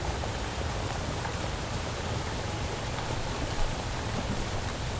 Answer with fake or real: fake